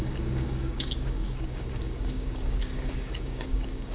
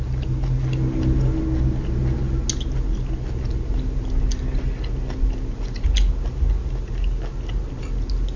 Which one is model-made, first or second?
first